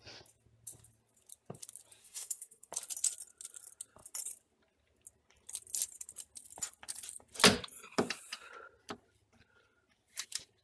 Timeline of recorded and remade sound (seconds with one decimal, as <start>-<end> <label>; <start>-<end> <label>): 0.0-2.0 recorded; 2.0-2.7 remade; 2.7-10.6 recorded